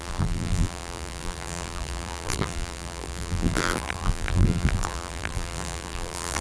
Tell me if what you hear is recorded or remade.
remade